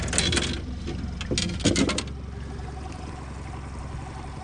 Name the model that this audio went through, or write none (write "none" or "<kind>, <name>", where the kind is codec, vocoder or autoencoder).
none